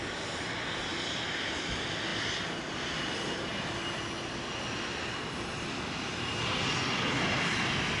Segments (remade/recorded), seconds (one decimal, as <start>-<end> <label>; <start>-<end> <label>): 0.0-8.0 recorded